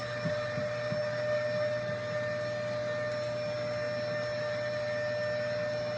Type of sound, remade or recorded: recorded